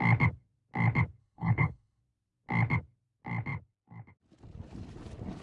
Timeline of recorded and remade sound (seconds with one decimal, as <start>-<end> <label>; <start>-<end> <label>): 0.0-1.2 recorded; 1.2-2.0 remade; 2.0-5.4 recorded